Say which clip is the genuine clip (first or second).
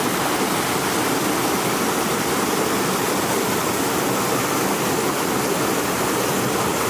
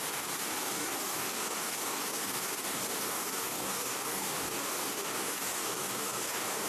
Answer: first